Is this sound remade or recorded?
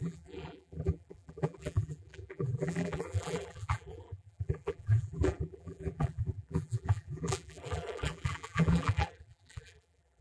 remade